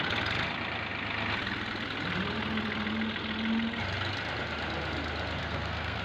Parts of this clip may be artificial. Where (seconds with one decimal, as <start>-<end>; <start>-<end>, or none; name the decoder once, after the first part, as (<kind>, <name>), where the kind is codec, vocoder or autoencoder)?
5.4-6.0 (codec, SNAC)